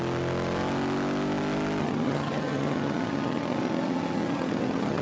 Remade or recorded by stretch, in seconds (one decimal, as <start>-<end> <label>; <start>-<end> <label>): 0.0-1.8 recorded; 1.8-5.0 remade